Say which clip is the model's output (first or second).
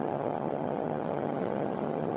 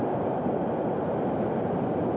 first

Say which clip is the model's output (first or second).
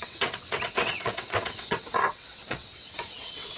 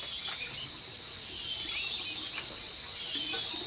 first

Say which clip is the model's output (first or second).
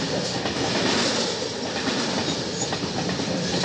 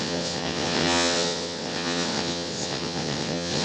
second